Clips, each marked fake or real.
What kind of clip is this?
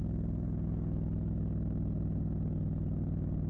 real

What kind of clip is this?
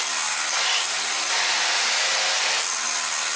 real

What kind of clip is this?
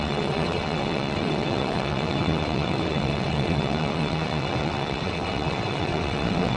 fake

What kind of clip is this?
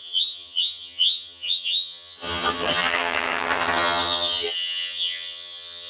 fake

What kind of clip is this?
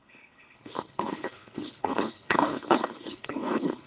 fake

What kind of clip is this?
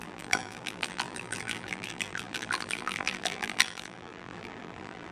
fake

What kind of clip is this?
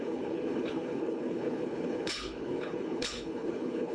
fake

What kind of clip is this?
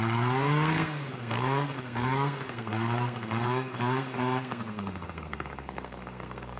fake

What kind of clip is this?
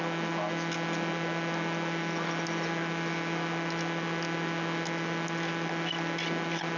real